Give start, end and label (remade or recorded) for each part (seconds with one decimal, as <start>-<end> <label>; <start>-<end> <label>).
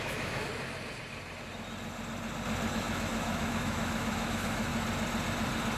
0.0-0.5 remade; 0.5-2.7 recorded; 2.7-4.7 remade; 4.7-5.8 recorded